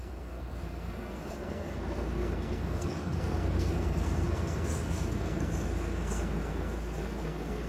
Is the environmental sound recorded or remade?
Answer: remade